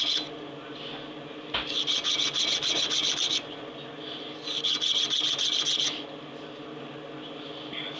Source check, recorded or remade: recorded